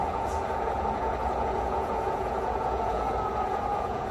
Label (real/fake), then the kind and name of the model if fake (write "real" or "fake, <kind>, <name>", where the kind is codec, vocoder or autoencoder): fake, vocoder, Vocos